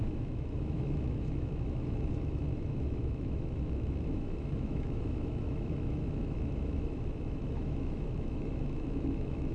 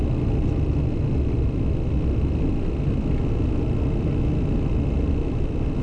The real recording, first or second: second